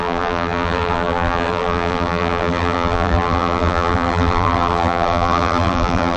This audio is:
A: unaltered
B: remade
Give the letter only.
B